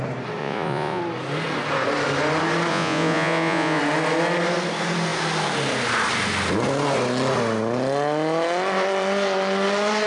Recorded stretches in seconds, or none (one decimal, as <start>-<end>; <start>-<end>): 0.0-0.4; 1.0-2.7; 3.8-10.1